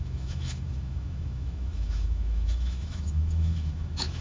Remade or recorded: remade